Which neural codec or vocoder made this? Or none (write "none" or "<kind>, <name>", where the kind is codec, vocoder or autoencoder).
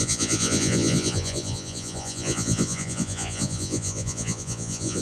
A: vocoder, Vocos